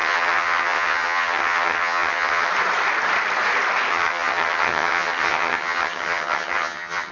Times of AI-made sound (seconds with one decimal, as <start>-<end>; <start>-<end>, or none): 0.0-2.5; 3.9-7.1